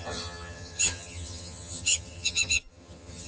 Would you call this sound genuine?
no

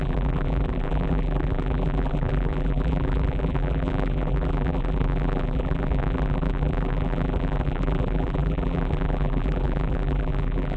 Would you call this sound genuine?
no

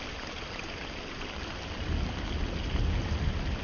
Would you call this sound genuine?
yes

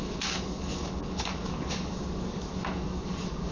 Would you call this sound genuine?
no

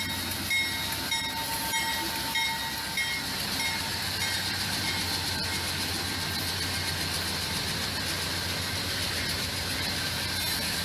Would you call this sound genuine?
yes